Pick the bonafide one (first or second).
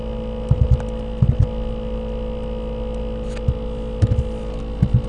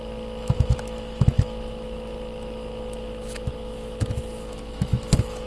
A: first